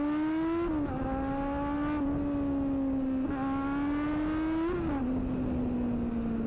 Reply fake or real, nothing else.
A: real